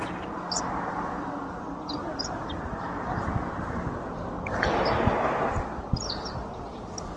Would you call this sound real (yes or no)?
yes